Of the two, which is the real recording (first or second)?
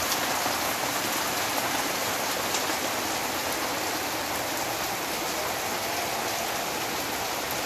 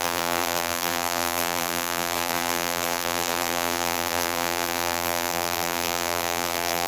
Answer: first